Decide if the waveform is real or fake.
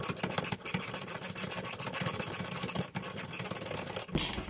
real